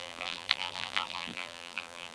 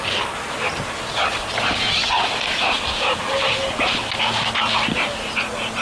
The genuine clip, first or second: second